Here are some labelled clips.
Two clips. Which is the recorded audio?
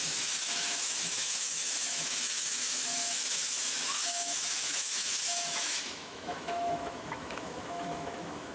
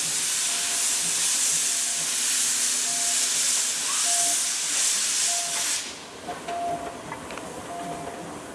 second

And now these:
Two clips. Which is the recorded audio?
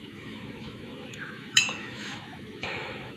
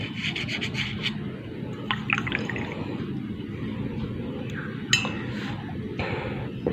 second